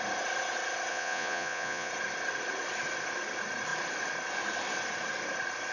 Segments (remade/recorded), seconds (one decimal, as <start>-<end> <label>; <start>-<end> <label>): 0.0-0.9 recorded; 0.9-1.9 remade; 1.9-5.7 recorded